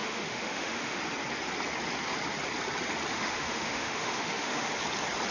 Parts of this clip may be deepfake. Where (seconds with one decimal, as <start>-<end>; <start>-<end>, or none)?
0.0-1.0; 3.1-4.7